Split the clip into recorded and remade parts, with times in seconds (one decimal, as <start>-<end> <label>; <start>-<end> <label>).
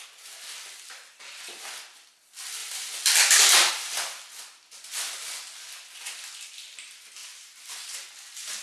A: 0.0-2.6 recorded; 2.6-3.7 remade; 3.7-8.6 recorded